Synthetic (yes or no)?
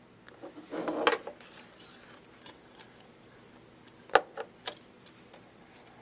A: no